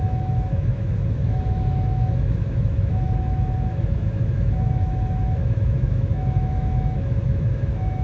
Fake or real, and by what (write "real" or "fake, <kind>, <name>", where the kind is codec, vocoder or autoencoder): fake, autoencoder, DAC-VAE